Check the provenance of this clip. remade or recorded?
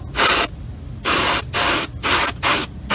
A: recorded